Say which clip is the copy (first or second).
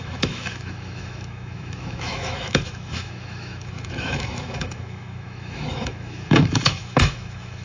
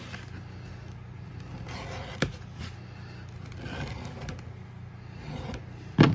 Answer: first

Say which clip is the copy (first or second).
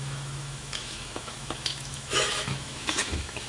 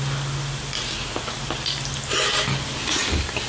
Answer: first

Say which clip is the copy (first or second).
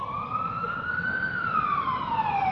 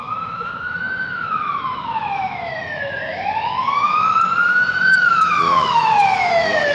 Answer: second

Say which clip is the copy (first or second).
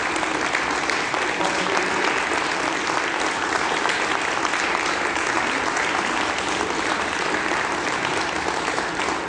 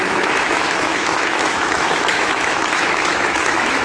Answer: second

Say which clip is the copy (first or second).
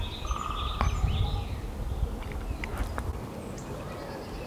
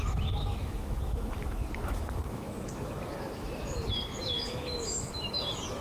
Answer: second